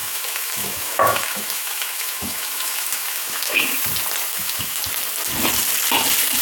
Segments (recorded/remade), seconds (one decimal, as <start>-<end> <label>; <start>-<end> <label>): 0.0-3.8 remade; 3.8-4.3 recorded; 4.3-4.8 remade; 4.8-6.4 recorded